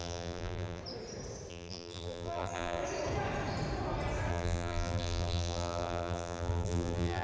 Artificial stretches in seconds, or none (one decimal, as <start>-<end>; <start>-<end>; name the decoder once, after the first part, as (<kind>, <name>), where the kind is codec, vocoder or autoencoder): 0.0-0.8 (vocoder, BigVGAN v2); 1.5-2.8; 4.3-7.2